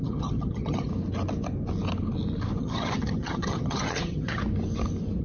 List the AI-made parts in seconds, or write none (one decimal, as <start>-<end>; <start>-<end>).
0.0-0.9; 2.6-4.4